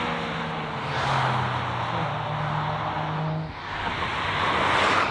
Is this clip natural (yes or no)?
yes